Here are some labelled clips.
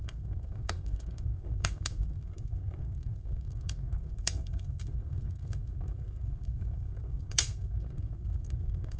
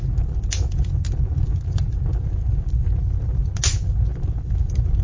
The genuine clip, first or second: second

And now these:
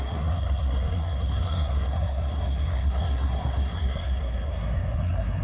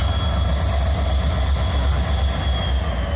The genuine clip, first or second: second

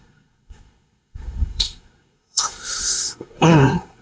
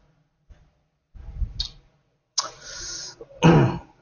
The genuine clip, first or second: second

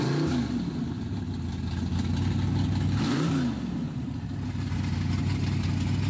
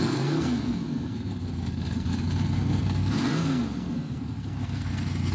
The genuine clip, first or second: first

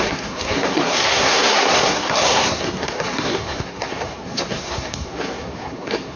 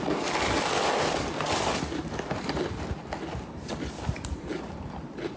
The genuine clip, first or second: second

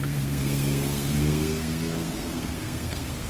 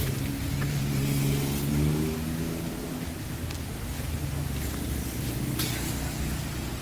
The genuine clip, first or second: second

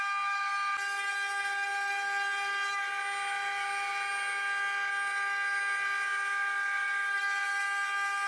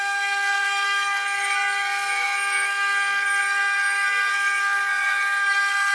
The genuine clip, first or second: first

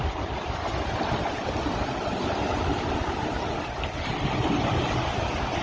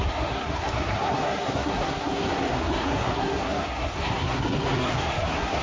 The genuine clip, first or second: first